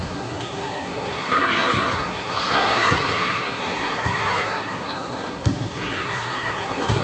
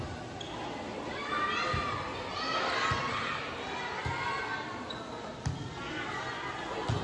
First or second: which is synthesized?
first